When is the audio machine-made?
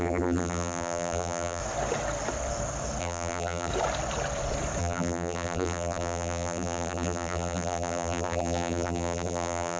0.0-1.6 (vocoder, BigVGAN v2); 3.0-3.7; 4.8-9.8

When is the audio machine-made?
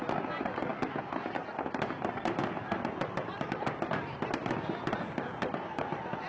none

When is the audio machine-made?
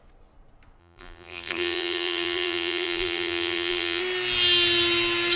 0.8-4.0 (vocoder, BigVGAN v2)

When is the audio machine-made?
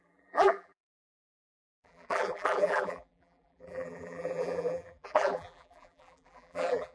0.0-6.9 (vocoder, BigVGAN v2)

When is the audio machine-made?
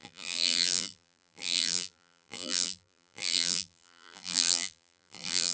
0.0-5.5 (vocoder, BigVGAN v2)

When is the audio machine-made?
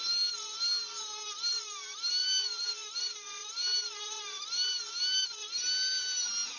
2.2-3.4 (vocoder, BigVGAN v2)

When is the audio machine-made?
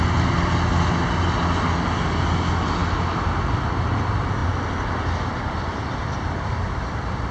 2.8-3.9 (vocoder, BigVGAN v2); 4.4-7.3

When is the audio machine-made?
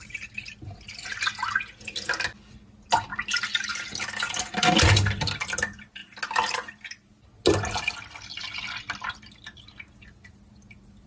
none